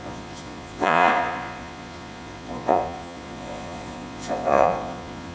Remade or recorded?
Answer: remade